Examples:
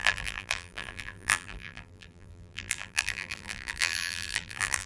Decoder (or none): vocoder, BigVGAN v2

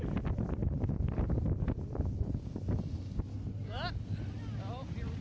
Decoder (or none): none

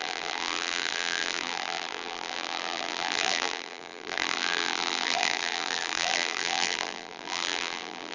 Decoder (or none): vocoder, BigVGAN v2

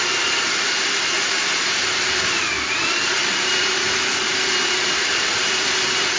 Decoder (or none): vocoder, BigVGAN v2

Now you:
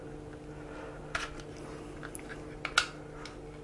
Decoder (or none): none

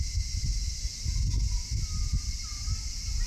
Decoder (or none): none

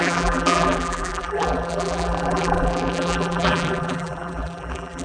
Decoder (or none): vocoder, BigVGAN v2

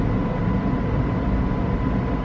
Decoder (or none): none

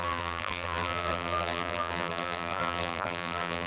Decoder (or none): vocoder, BigVGAN v2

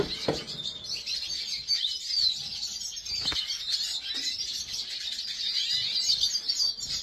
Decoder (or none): none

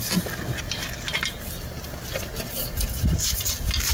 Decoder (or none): none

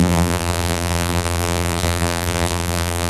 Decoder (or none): vocoder, BigVGAN v2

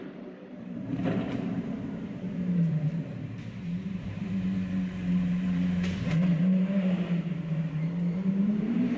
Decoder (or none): vocoder, BigVGAN v2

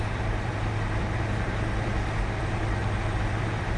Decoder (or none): vocoder, BigVGAN v2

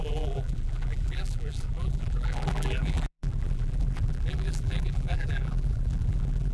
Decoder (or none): vocoder, BigVGAN v2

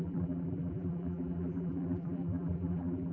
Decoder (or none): vocoder, BigVGAN v2